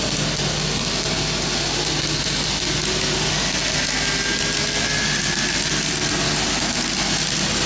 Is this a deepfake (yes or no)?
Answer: no